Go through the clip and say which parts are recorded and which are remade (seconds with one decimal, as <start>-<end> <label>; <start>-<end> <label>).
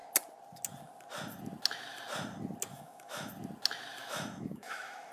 0.0-2.7 recorded; 2.7-3.3 remade; 3.3-4.0 recorded; 4.0-5.1 remade